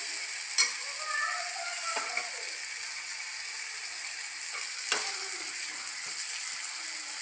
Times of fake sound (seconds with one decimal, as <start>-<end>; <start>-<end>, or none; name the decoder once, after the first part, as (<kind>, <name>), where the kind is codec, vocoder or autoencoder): none